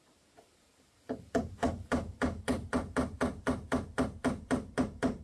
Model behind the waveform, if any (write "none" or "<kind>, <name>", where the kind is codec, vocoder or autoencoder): vocoder, BigVGAN v2